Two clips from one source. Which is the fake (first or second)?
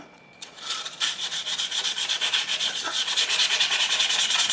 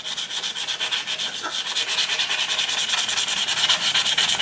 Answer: first